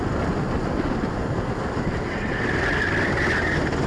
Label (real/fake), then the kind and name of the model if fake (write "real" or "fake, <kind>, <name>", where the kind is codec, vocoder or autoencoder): real